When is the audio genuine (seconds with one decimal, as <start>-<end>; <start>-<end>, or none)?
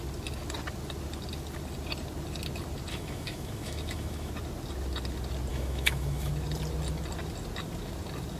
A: 0.0-2.9; 4.3-5.5; 6.3-8.4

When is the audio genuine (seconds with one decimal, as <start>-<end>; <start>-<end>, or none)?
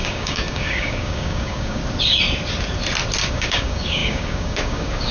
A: 1.8-3.3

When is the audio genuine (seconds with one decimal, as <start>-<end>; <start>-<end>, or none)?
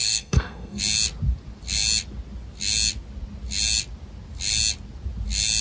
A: 0.8-5.6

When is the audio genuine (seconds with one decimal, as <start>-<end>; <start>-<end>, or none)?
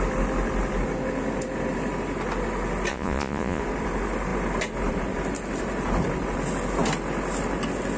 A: 0.0-2.9; 3.6-8.0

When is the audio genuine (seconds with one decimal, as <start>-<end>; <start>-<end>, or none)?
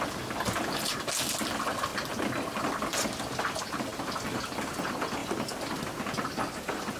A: 0.0-5.2; 5.8-7.0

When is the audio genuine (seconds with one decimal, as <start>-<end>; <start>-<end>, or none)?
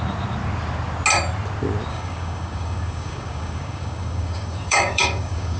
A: 0.0-1.9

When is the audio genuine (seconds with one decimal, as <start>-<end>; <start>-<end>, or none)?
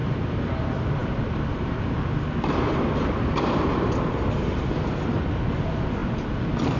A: 0.0-6.8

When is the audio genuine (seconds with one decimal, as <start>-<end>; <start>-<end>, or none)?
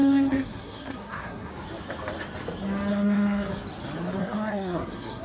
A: 1.5-2.9; 3.5-4.2